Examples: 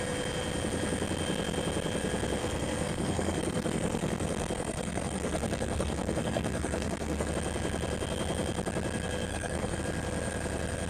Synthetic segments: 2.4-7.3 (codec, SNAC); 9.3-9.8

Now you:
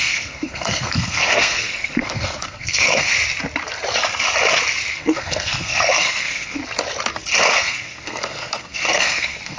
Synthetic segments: 0.0-3.1 (codec, SNAC); 4.9-6.6; 7.6-9.6